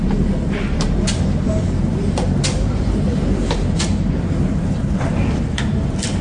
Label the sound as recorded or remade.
remade